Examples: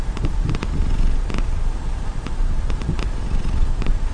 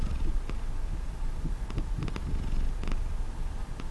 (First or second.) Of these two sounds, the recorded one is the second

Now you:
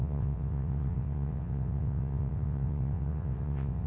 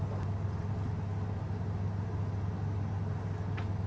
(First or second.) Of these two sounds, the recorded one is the second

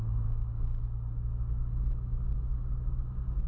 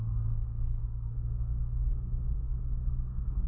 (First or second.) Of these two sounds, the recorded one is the first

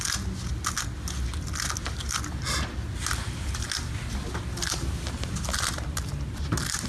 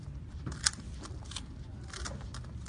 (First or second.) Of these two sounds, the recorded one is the first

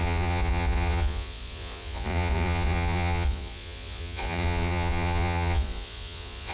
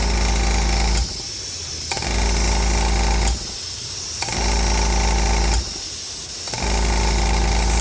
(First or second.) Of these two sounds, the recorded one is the second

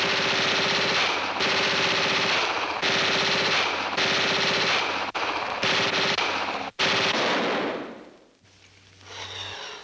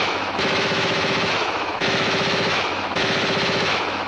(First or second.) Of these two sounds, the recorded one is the first